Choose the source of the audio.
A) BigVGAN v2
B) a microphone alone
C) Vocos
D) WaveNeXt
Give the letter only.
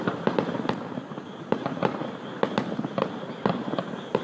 B